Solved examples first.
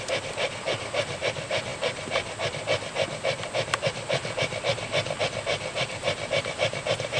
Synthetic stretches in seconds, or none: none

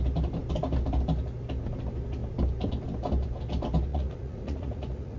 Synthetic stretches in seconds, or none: 3.9-5.2 (vocoder, Vocos)

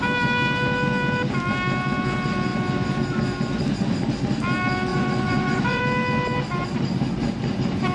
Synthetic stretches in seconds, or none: 4.9-5.8 (vocoder, Vocos)

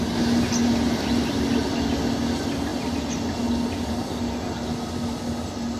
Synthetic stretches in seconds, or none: none

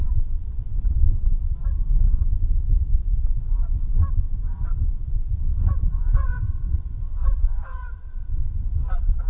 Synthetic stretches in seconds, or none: 0.0-9.3 (vocoder, Vocos)

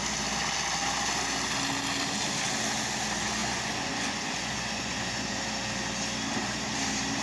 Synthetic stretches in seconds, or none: 3.4-5.4 (vocoder, Vocos)

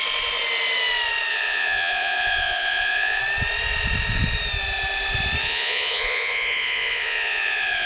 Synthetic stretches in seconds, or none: 1.3-3.2 (vocoder, Vocos); 5.4-7.9